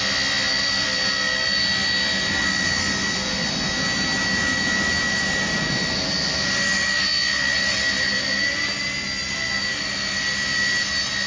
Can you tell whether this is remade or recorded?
recorded